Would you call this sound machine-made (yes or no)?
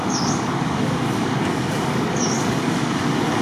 yes